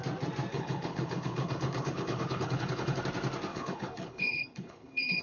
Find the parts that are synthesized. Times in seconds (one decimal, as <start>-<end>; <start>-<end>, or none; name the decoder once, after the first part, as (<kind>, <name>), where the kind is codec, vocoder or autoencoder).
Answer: 0.5-3.0 (codec, HILCodec); 3.5-5.2